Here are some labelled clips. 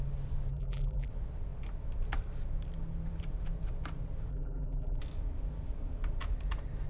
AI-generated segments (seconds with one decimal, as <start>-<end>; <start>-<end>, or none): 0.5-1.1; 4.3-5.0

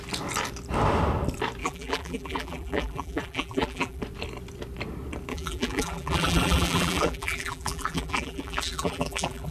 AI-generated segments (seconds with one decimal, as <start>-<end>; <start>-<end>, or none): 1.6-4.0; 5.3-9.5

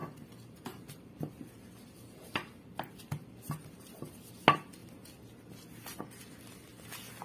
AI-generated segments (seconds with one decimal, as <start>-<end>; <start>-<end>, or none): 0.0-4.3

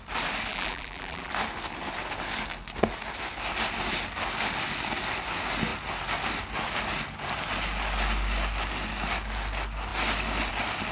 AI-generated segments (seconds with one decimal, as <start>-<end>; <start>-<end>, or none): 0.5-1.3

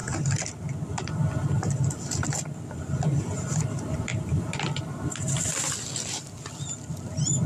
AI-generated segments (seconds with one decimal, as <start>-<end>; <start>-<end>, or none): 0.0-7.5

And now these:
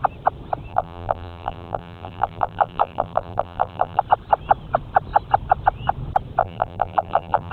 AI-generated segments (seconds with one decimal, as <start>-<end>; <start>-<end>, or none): 0.7-4.0; 6.4-7.5

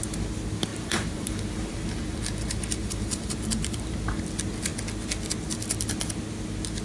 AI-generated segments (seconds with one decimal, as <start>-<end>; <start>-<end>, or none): 0.7-4.2